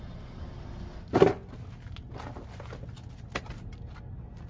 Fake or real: real